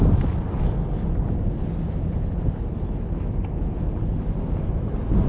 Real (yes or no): yes